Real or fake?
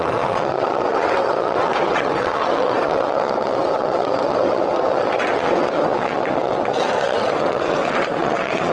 fake